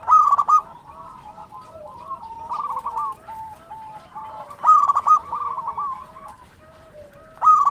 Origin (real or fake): fake